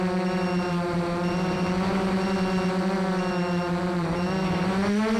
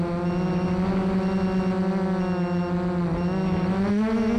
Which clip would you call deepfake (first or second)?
first